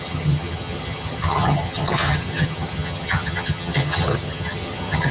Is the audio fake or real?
fake